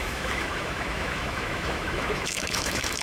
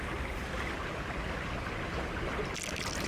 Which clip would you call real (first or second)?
second